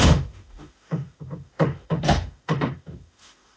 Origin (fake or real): fake